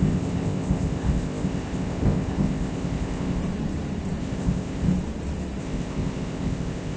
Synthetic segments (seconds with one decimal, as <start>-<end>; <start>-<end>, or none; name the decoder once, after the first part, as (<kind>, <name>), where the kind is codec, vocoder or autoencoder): 0.0-3.4 (codec, ZipCodec); 4.2-4.9; 5.6-7.0